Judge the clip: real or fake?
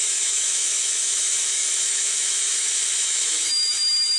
fake